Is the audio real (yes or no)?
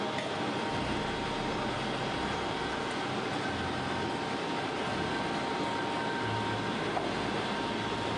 yes